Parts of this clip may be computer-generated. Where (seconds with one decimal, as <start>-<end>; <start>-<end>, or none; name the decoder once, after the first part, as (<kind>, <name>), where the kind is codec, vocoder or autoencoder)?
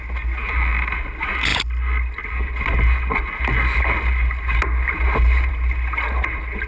none